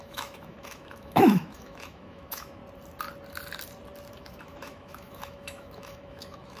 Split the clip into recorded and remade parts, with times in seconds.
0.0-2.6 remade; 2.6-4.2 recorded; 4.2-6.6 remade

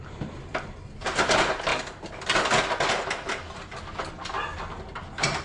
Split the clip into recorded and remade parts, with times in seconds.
0.0-5.4 recorded

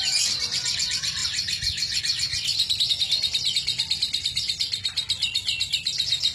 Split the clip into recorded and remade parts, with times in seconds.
0.0-6.3 recorded